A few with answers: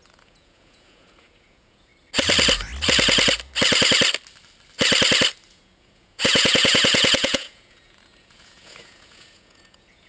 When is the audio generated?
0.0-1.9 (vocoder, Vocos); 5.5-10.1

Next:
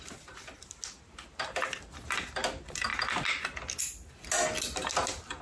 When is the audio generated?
none

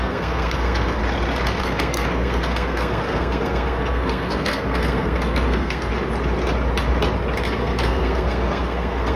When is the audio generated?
0.0-1.0 (codec, SNAC); 1.6-5.9; 7.4-9.2